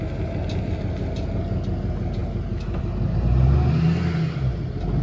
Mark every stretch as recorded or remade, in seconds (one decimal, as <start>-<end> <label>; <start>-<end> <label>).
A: 0.0-5.0 recorded